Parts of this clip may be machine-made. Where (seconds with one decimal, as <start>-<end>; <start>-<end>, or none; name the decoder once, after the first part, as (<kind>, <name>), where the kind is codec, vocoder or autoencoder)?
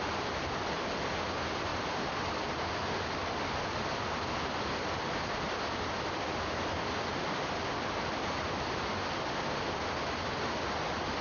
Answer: none